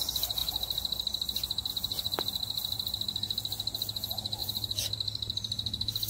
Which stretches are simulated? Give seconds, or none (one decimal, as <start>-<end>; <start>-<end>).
4.4-6.1